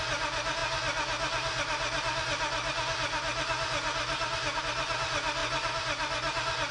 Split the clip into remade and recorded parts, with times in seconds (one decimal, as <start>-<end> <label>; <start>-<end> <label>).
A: 0.0-6.7 recorded